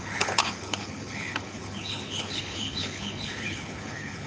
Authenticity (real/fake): fake